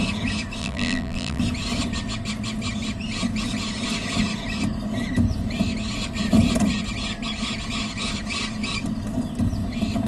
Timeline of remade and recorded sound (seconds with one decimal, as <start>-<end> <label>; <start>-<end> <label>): 0.0-0.6 recorded; 0.6-1.4 remade; 1.4-10.1 recorded